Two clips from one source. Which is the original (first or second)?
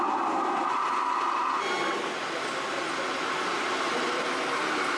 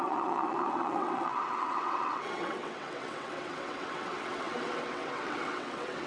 first